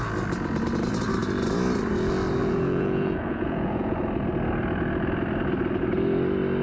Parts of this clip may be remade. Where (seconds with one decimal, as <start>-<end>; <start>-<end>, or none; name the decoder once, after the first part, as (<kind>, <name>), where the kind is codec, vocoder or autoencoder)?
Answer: 2.4-4.0 (vocoder, Vocos)